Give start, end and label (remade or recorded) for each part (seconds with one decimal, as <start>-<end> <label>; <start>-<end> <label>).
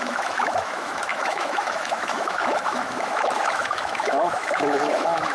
0.0-5.3 remade